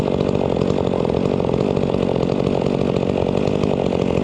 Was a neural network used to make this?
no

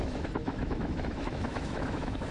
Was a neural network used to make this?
yes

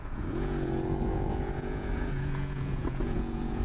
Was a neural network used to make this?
yes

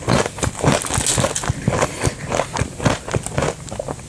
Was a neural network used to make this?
no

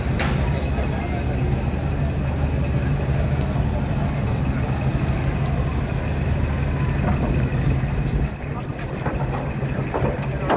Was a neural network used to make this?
no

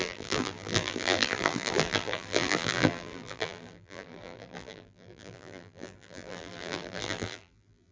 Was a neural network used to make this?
yes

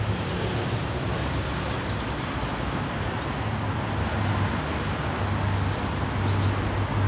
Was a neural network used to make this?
no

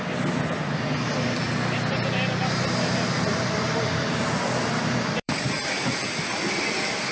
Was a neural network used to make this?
yes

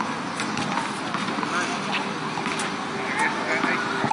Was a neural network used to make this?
no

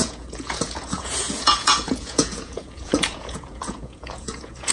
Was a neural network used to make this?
yes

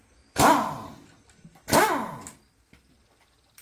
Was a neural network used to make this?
no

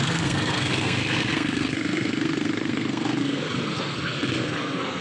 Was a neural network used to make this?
yes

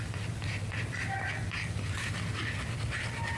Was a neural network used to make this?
no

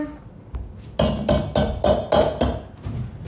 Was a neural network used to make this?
no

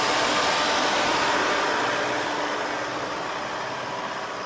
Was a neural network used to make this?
no